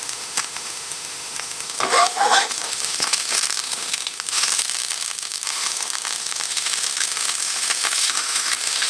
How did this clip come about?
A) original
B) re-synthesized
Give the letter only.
B